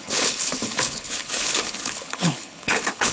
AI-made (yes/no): yes